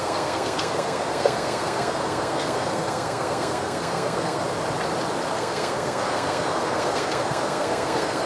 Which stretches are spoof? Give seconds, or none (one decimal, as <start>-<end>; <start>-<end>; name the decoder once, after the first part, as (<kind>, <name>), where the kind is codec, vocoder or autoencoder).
0.0-4.4 (codec, SNAC); 5.3-8.3